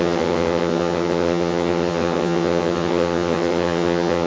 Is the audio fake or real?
fake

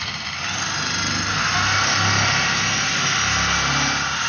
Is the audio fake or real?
real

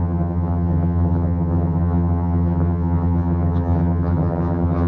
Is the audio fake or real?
fake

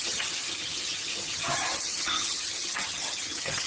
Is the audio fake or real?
fake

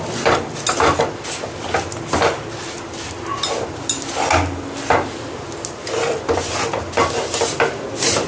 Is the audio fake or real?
real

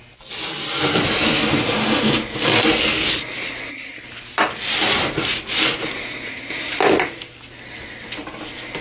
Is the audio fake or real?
real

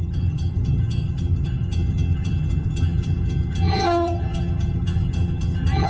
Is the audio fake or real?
fake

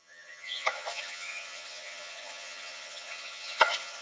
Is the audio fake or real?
fake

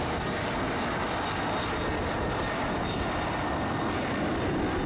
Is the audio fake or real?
real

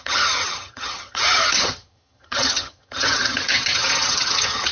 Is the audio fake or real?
fake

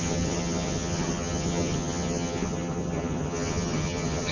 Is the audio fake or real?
fake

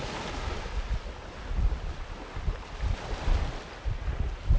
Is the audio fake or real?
real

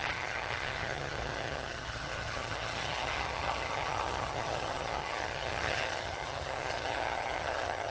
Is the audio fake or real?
fake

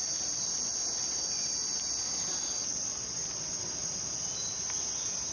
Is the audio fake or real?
real